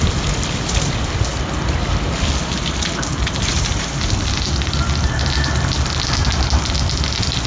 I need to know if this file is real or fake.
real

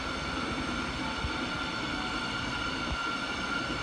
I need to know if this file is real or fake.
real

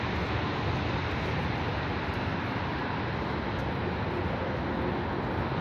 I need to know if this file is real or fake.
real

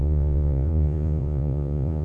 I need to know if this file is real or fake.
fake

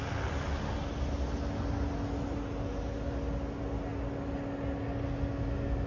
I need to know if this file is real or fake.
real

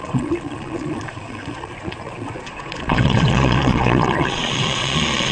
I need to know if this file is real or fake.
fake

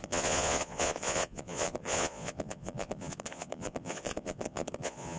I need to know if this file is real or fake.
fake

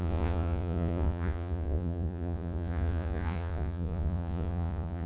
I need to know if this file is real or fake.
fake